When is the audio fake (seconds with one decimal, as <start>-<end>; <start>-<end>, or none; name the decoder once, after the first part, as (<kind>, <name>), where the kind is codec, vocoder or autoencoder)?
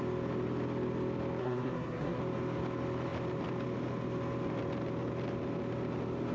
1.4-2.2 (codec, SNAC)